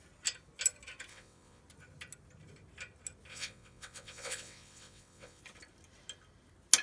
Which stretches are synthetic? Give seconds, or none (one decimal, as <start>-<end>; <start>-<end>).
1.1-1.6; 3.3-5.4

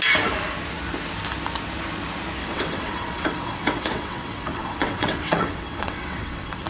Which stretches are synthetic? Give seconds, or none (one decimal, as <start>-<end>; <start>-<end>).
2.4-6.7

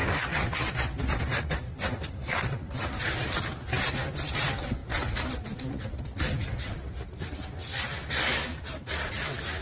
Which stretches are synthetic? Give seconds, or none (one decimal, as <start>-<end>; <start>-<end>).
none

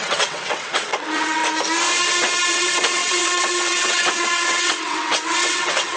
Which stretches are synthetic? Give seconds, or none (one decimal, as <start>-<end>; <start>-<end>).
0.0-1.4; 2.5-6.0

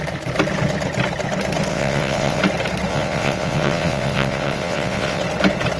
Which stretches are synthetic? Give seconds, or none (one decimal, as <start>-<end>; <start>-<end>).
1.7-2.4; 2.9-5.2

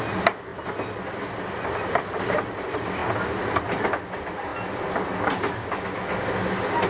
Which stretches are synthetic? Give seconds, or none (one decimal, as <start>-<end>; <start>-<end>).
none

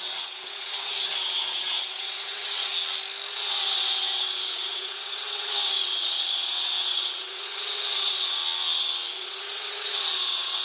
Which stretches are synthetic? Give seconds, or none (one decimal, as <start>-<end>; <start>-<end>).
0.0-2.7; 3.3-8.4; 9.1-10.6